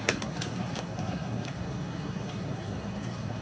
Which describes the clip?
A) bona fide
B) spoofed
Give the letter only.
B